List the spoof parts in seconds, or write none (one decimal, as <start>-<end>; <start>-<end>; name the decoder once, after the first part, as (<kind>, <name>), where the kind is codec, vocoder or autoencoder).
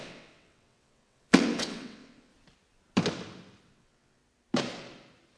0.0-2.3 (vocoder, WaveNeXt); 3.7-4.2